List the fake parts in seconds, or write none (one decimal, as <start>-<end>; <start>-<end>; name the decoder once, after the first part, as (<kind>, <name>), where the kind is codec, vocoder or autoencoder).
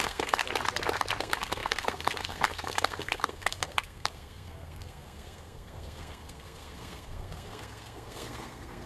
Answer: 0.0-0.4 (codec, SNAC); 1.2-8.9